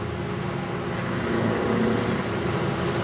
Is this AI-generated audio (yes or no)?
no